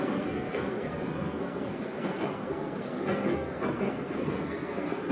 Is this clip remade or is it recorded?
remade